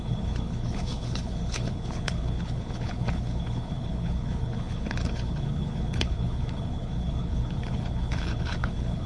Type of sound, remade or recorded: remade